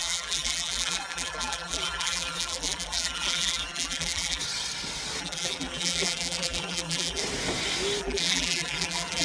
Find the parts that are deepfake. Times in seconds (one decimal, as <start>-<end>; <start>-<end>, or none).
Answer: 0.0-4.4; 5.2-7.2; 8.0-9.2